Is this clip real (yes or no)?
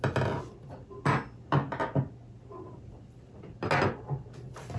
yes